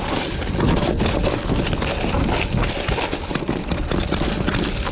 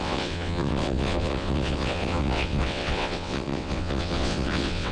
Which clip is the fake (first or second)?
second